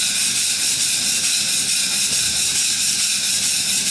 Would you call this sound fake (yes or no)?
no